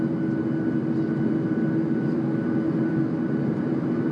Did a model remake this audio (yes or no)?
no